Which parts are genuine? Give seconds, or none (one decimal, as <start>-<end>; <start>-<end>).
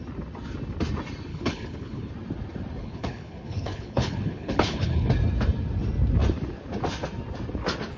0.0-1.3; 2.1-2.8; 5.1-8.0